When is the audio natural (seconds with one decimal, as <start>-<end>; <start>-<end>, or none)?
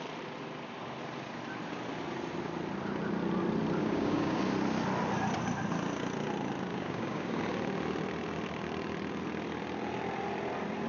0.0-3.8; 4.4-6.7; 7.4-10.9